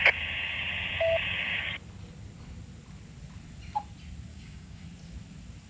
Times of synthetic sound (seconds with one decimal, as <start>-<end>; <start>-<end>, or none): 4.3-4.8